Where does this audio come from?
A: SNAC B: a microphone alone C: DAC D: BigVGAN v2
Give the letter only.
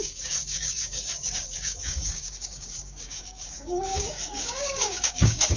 C